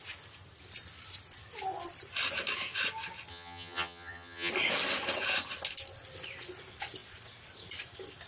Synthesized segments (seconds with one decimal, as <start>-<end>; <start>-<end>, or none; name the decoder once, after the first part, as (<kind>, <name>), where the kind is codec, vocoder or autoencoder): 3.3-4.5 (vocoder, HiFi-GAN)